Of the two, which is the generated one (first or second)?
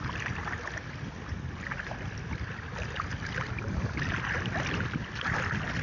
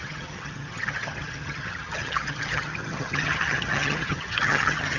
second